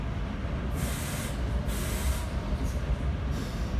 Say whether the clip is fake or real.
real